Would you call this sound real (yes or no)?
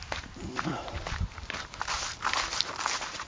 no